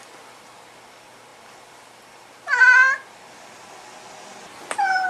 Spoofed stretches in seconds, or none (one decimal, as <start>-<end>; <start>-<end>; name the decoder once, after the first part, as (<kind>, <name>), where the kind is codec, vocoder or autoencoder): none